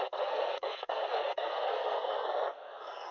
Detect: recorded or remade remade